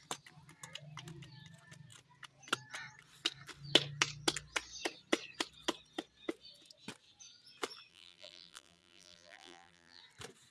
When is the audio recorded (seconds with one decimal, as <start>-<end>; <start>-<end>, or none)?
0.0-7.9; 10.0-10.5